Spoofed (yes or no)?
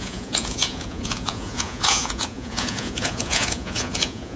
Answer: yes